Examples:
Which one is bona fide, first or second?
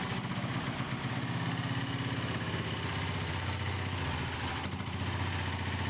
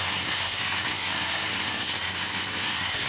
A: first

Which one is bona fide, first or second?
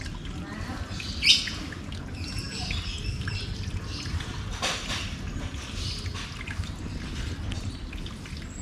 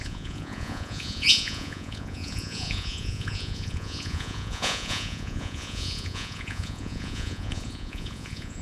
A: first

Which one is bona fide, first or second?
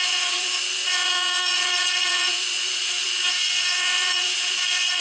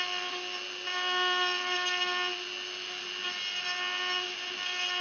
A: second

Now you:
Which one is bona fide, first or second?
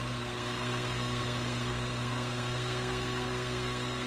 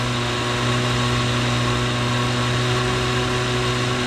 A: second